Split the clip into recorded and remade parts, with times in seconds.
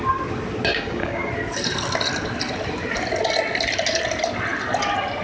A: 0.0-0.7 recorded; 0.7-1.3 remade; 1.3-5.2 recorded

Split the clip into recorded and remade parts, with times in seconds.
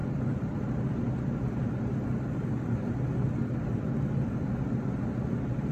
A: 0.0-5.7 recorded